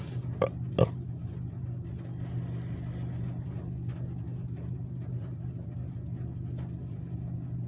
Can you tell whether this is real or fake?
real